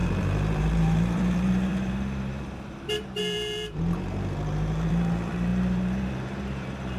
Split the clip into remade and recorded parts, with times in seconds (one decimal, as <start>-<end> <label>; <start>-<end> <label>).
0.0-7.0 remade

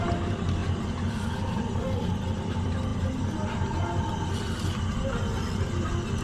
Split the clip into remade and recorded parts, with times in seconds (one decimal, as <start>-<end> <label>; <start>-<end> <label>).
0.0-6.2 recorded